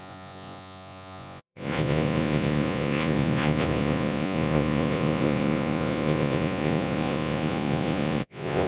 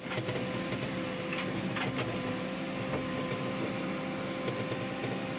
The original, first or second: second